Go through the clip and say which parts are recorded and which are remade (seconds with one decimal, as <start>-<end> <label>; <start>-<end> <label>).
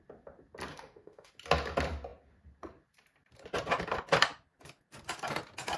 0.0-0.7 recorded; 0.7-1.3 remade; 1.3-5.8 recorded